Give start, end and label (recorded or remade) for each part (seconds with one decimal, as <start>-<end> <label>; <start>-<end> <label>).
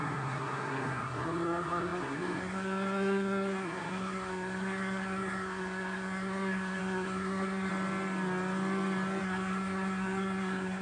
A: 0.0-7.7 remade; 7.7-9.2 recorded; 9.2-10.8 remade